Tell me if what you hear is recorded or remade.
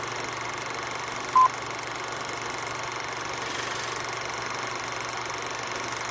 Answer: recorded